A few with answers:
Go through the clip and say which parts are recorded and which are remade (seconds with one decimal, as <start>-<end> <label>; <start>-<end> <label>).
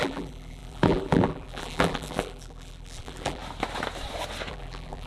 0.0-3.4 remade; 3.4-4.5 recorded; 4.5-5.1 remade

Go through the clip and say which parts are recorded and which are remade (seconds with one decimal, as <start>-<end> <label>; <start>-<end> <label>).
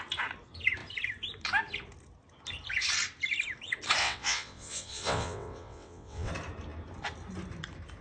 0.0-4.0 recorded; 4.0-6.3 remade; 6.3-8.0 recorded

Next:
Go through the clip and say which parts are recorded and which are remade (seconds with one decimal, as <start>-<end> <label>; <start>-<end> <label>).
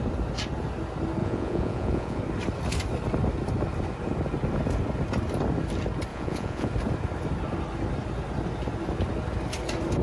0.0-1.2 recorded; 1.2-2.2 remade; 2.2-6.1 recorded; 6.1-6.7 remade; 6.7-10.0 recorded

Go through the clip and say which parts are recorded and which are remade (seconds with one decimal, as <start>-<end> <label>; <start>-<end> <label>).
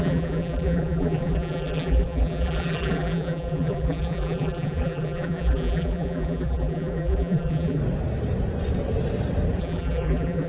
0.0-7.8 remade; 7.8-9.6 recorded; 9.6-10.5 remade